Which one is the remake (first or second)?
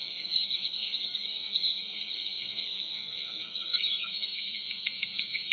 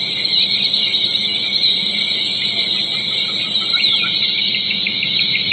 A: first